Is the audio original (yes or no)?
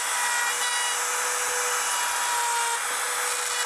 yes